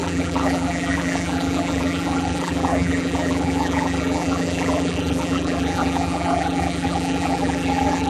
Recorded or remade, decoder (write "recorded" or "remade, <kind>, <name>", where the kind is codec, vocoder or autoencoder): remade, vocoder, BigVGAN v2